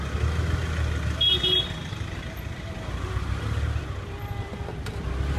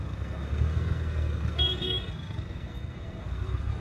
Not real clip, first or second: second